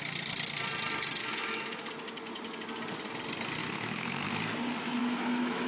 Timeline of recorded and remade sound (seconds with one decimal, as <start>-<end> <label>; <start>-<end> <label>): 0.0-1.2 recorded; 1.2-1.9 remade; 1.9-3.6 recorded; 3.6-4.4 remade; 4.4-5.0 recorded; 5.0-5.7 remade